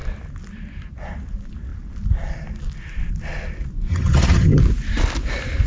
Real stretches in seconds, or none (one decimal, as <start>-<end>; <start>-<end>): 0.0-3.9; 4.6-5.7